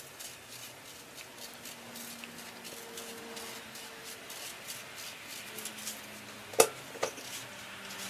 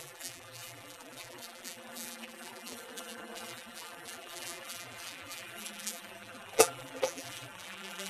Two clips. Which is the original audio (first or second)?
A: first